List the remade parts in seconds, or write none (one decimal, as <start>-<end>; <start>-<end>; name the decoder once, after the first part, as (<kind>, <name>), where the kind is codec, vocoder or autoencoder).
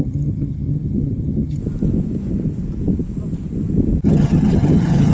0.0-1.6 (vocoder, HiFi-GAN); 4.0-5.1